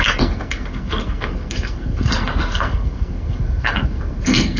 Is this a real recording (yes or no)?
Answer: no